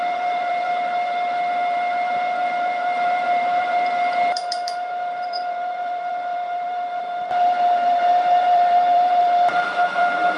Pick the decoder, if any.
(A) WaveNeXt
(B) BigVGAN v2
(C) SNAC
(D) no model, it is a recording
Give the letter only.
B